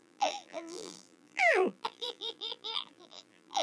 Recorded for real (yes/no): no